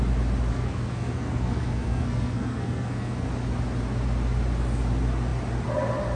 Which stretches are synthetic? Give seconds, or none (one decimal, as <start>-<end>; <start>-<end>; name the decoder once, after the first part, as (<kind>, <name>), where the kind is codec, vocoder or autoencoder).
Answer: 0.5-3.3 (codec, SNAC)